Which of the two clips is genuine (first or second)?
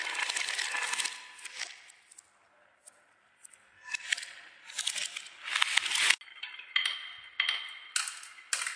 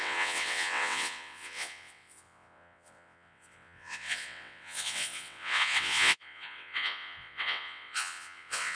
first